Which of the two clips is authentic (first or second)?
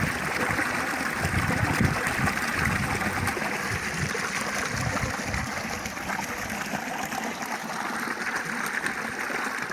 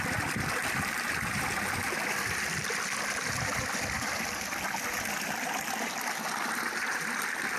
first